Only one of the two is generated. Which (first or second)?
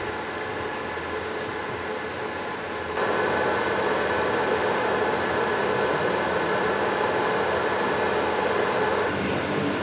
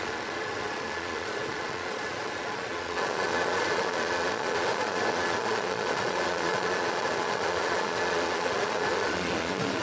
second